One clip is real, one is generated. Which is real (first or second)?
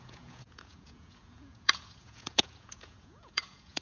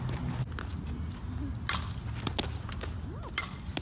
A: second